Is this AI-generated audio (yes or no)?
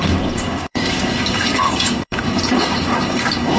yes